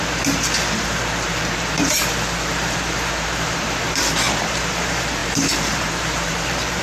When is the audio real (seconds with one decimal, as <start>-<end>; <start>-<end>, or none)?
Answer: none